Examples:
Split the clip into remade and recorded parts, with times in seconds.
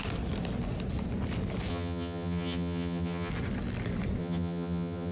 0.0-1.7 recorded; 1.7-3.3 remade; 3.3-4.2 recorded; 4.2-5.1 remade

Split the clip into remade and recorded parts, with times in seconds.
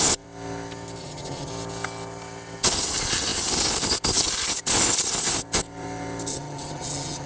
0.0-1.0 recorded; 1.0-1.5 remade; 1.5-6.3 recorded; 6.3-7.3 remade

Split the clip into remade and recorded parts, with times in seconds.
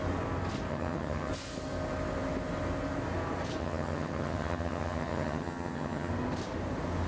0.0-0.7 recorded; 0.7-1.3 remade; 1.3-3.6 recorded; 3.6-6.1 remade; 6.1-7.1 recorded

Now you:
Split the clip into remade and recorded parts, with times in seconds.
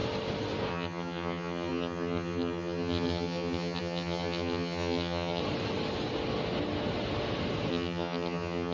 0.0-0.7 recorded; 0.7-5.4 remade; 5.4-7.7 recorded; 7.7-8.7 remade